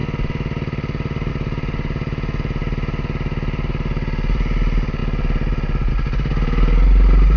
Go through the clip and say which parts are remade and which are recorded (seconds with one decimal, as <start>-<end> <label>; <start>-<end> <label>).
0.0-7.4 recorded